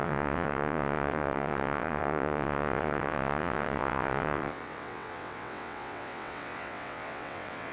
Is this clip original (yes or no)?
no